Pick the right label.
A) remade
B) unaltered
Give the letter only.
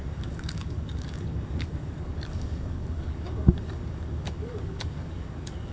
A